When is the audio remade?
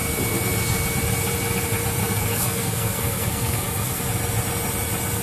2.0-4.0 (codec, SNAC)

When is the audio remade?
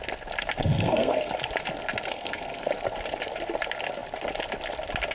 0.6-1.3 (codec, SNAC); 2.1-2.7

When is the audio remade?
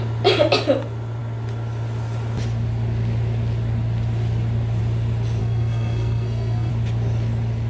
5.4-6.7 (codec, SNAC)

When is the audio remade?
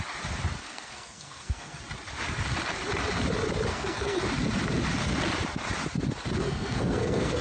0.6-1.8 (codec, SNAC); 3.7-4.2; 6.4-7.4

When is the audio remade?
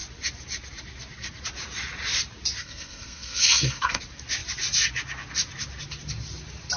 2.6-4.0 (codec, SNAC)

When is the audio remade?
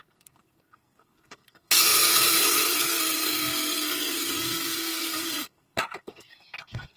0.0-7.0 (codec, SNAC)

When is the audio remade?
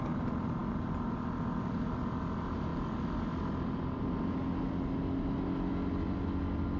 none